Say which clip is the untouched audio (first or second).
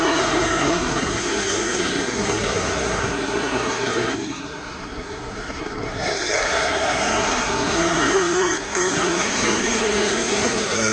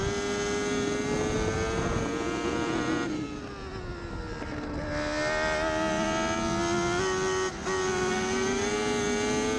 second